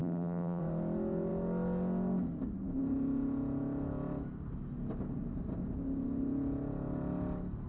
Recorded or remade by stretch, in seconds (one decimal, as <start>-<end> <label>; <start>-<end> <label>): 0.0-0.6 remade; 0.6-7.7 recorded